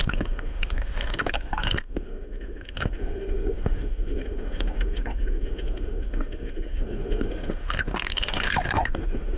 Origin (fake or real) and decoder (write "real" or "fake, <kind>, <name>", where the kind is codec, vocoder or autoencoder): fake, autoencoder, DAC-VAE